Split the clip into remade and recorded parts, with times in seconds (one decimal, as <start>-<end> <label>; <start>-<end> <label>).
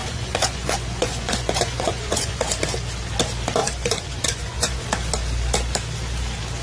0.0-2.4 remade; 2.4-3.6 recorded; 3.6-4.8 remade; 4.8-6.6 recorded